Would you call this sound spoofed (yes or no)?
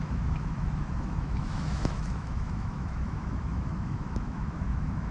yes